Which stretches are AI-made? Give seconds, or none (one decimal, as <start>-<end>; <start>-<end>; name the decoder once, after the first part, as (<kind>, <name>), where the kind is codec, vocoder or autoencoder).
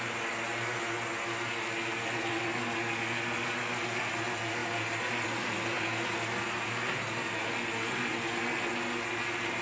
none